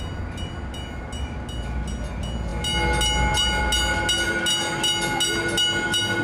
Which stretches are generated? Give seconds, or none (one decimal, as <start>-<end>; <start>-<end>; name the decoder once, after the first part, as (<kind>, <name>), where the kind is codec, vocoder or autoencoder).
none

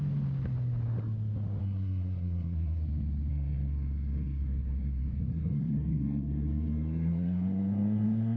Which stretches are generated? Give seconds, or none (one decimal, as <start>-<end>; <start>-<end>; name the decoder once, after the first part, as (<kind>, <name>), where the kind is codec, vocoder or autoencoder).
1.6-2.8 (codec, SNAC); 3.3-8.4